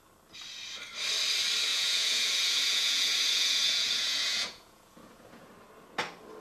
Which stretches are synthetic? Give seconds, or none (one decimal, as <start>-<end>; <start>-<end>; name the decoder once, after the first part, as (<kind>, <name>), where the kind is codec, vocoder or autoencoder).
1.7-5.5 (vocoder, Vocos)

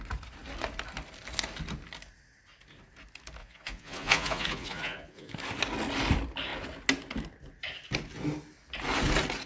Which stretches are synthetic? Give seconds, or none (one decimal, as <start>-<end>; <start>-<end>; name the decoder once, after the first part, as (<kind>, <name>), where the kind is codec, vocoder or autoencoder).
3.4-5.3 (vocoder, Vocos)

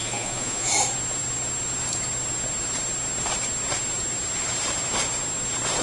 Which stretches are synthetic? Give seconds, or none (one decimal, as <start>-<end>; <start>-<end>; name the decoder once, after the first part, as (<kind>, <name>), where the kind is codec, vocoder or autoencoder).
0.0-0.7 (vocoder, Vocos)

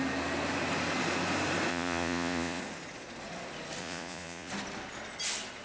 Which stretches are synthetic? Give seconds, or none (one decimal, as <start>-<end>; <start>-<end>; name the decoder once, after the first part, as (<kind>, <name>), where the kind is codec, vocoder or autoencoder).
1.7-2.6 (vocoder, Vocos); 3.8-4.5

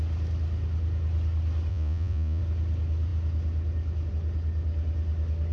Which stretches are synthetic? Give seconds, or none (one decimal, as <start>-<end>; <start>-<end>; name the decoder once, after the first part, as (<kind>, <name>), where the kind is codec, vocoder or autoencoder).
1.7-2.4 (vocoder, Vocos)

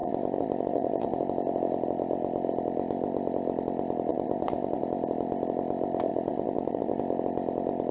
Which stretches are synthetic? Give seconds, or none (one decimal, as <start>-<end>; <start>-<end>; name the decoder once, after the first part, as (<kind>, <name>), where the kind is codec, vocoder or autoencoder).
0.0-1.2 (vocoder, Vocos); 4.1-4.8; 6.1-7.0